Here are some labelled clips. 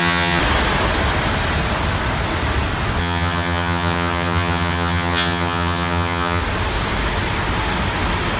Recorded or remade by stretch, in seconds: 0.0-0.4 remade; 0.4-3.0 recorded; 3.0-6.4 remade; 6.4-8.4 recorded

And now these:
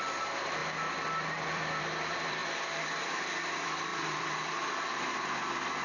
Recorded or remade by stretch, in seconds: 0.0-0.6 remade; 0.6-1.4 recorded; 1.4-5.8 remade

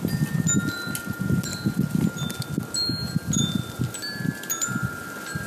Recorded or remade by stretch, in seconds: 0.0-5.5 recorded

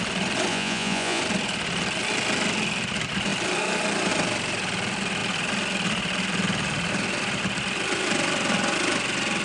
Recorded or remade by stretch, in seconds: 0.0-0.5 recorded; 0.5-1.2 remade; 1.2-9.4 recorded